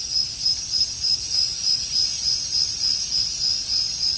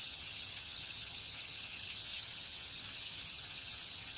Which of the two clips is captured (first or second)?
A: first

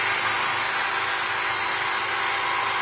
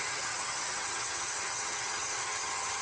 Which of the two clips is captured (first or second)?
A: first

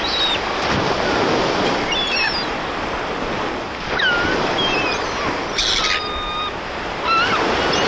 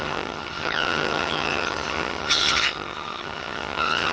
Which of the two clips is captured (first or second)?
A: first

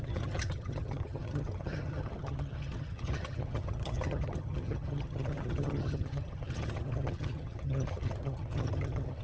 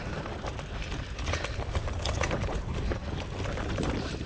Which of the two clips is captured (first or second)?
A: second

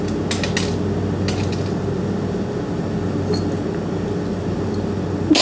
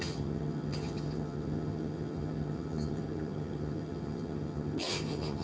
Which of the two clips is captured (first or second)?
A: first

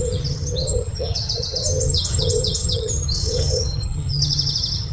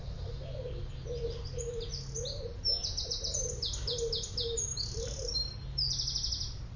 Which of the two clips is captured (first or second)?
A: second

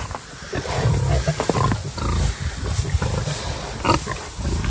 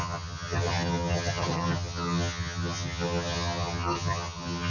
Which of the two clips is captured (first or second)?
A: first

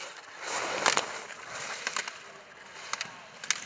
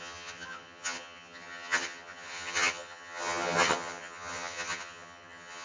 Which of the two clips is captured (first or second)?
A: first